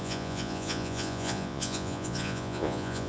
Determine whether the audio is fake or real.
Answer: fake